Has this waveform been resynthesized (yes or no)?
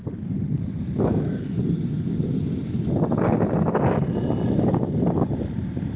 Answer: no